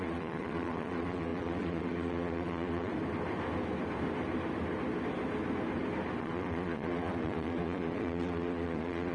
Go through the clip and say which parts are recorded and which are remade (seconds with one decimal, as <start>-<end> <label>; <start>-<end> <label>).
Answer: 0.0-2.9 remade; 2.9-6.2 recorded; 6.2-9.1 remade